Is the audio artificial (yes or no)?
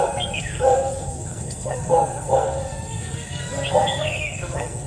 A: yes